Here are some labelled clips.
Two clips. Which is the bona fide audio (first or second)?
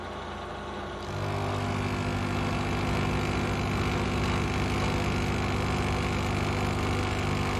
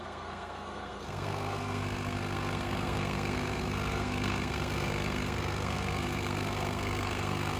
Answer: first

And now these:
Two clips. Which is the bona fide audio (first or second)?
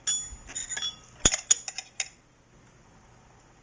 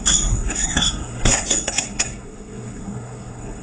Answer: first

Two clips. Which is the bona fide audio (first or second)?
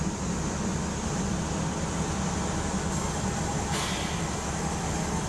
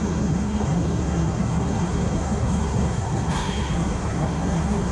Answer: first